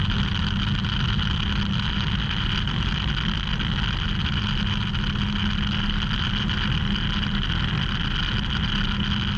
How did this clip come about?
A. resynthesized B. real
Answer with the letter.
B